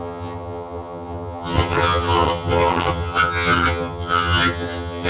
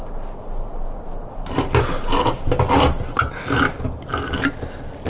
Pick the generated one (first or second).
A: first